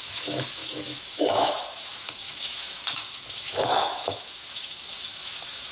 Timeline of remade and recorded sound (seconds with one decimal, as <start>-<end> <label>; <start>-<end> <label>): 0.0-5.7 remade